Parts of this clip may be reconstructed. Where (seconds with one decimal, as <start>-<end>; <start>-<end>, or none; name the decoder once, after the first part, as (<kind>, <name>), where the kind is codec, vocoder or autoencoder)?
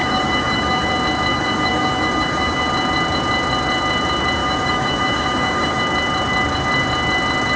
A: 0.0-0.9 (autoencoder, DAC-VAE); 1.3-2.6; 4.4-5.8